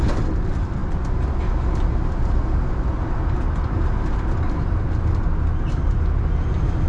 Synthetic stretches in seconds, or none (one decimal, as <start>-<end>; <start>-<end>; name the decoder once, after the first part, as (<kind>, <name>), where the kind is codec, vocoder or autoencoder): none